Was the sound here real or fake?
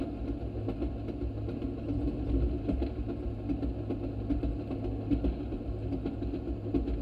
real